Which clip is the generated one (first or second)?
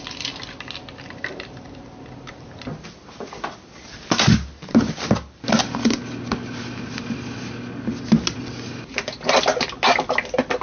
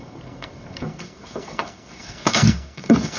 second